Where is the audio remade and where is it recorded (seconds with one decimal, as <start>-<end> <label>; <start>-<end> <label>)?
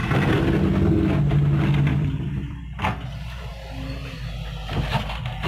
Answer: 0.0-1.9 recorded; 1.9-2.6 remade; 2.6-5.5 recorded